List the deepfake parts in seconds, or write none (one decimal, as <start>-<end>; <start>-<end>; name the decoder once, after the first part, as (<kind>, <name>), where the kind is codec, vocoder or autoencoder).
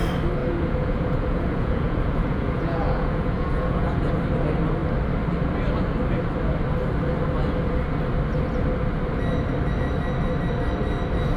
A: 0.4-4.1 (vocoder, Vocos)